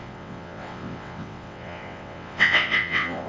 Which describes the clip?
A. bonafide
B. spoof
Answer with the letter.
B